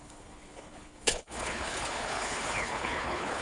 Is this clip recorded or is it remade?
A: remade